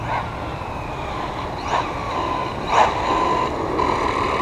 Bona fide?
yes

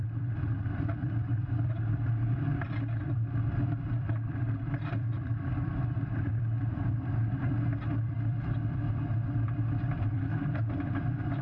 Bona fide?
no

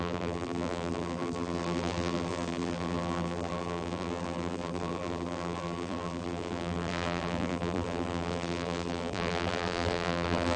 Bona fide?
no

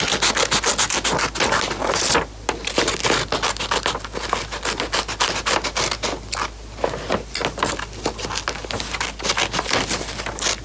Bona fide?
yes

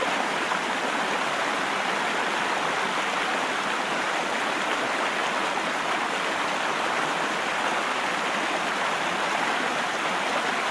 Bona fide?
yes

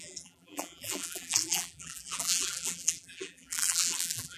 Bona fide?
no